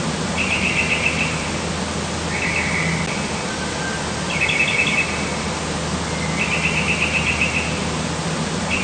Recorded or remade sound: recorded